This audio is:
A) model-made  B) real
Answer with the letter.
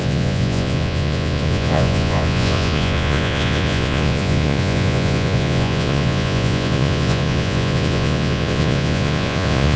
A